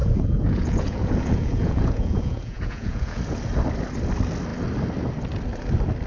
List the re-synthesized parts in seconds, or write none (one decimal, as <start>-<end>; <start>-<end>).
0.0-3.2

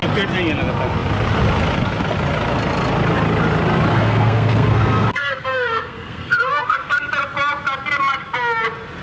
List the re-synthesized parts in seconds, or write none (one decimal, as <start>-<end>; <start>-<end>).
3.9-7.1

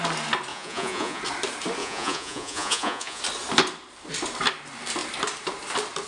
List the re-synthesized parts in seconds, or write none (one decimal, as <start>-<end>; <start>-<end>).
0.5-1.2; 1.8-3.2

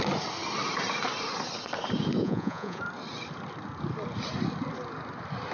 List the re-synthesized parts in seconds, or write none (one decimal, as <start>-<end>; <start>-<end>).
2.2-2.8

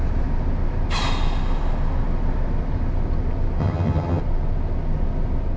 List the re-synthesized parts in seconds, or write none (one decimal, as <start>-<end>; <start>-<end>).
3.6-4.2

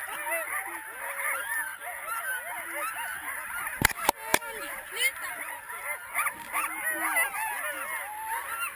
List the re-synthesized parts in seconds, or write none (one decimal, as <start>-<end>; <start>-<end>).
3.2-5.3

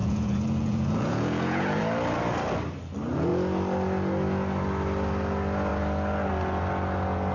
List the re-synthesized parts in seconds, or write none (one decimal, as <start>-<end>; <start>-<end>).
0.0-1.8